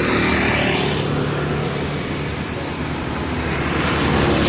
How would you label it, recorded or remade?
recorded